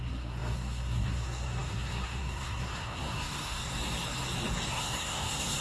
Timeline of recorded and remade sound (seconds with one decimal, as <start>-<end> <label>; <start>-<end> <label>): 0.0-3.6 remade; 3.6-4.7 recorded; 4.7-5.6 remade